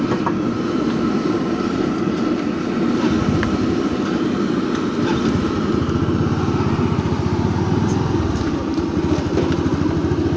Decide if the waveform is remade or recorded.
recorded